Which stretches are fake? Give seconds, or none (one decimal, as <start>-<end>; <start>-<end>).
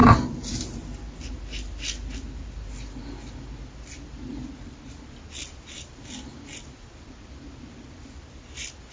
none